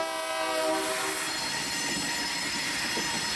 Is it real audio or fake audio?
real